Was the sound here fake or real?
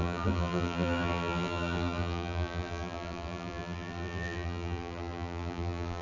fake